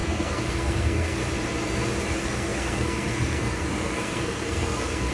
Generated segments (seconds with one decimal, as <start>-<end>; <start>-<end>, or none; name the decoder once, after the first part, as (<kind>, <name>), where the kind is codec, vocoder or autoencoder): 0.0-1.2 (codec, SNAC); 2.1-5.1